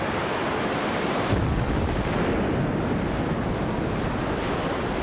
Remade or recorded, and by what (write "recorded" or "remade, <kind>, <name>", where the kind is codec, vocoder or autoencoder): recorded